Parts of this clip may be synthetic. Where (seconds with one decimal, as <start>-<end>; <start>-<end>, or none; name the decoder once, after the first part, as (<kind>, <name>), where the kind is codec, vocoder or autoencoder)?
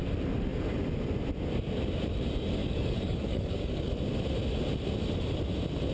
2.6-3.9 (codec, DAC)